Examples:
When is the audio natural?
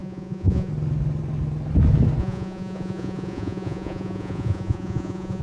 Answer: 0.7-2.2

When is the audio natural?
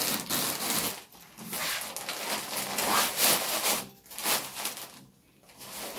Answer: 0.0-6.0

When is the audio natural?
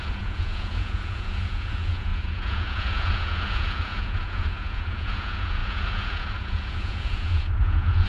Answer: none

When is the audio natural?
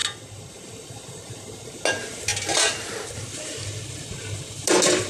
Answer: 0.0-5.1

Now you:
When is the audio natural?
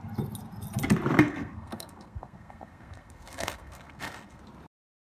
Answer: 0.0-1.3; 4.4-5.1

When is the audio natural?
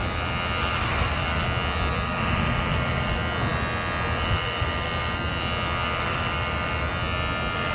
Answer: 0.0-7.7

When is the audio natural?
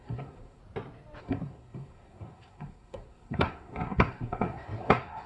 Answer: 0.6-1.2